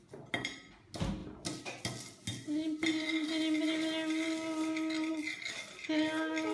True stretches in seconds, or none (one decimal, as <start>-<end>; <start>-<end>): 0.0-6.5